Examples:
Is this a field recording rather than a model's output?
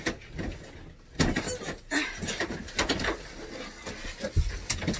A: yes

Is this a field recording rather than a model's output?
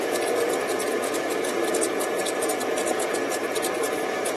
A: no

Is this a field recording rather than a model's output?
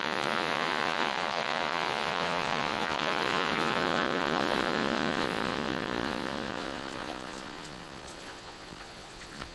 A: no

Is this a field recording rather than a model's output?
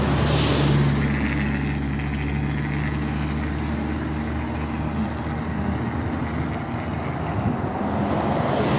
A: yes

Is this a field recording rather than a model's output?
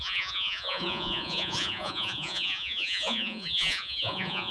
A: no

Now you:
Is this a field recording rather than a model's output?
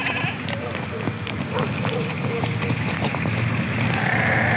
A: yes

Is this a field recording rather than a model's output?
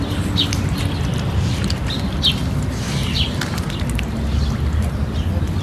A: yes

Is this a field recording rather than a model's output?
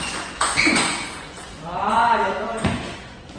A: no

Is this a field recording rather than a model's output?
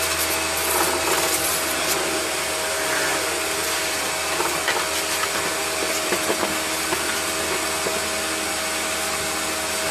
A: yes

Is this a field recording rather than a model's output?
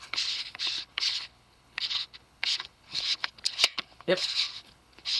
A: no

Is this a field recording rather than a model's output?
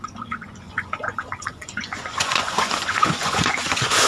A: no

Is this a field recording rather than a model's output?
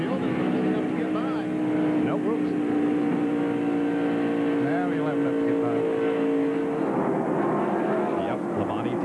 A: yes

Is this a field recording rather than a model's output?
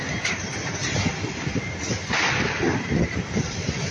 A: no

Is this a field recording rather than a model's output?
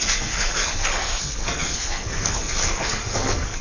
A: no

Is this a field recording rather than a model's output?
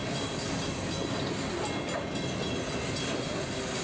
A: yes